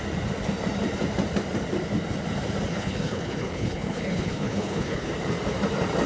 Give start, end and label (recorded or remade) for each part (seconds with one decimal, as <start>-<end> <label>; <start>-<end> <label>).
0.0-2.7 recorded; 2.7-5.1 remade; 5.1-6.1 recorded